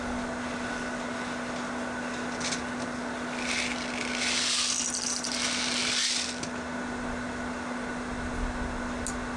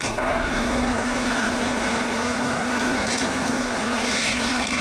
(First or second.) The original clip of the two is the first